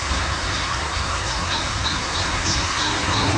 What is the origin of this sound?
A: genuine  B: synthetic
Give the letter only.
B